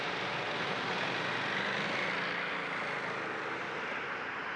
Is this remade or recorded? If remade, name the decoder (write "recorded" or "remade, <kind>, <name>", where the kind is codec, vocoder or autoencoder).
recorded